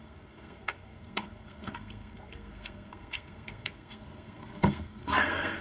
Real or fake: fake